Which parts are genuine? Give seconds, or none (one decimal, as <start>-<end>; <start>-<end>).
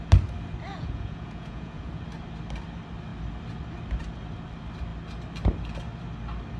0.0-0.7; 2.0-6.6